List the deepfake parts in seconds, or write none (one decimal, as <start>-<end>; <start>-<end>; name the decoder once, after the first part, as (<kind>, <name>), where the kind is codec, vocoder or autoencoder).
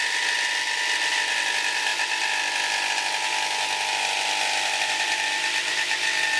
none